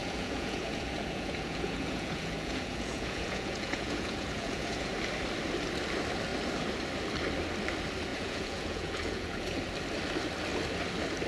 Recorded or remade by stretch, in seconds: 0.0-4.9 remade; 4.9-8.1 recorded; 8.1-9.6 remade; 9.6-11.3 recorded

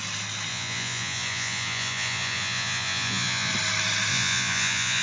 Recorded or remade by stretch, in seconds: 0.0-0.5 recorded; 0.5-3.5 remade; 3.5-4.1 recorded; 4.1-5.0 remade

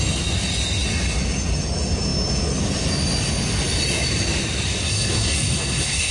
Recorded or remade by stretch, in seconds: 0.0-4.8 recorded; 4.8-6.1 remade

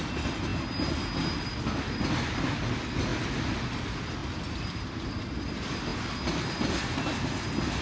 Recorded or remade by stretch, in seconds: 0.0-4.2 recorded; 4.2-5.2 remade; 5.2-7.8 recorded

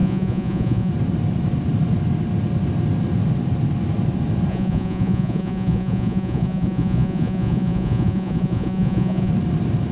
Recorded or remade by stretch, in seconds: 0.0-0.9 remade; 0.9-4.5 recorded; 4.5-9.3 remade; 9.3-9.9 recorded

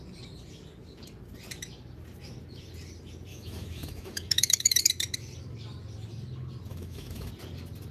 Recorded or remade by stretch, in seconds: 0.0-3.3 recorded; 3.3-4.8 remade; 4.8-6.7 recorded; 6.7-7.3 remade; 7.3-7.9 recorded

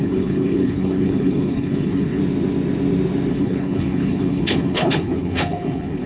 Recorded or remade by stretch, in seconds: 0.0-2.2 remade; 2.2-3.3 recorded; 3.3-6.1 remade